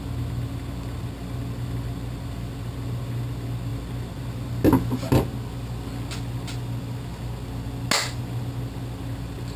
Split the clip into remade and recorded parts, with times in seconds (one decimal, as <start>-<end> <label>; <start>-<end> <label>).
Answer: 0.0-9.6 recorded